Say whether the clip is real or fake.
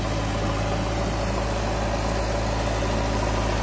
real